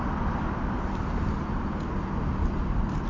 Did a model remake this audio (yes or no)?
no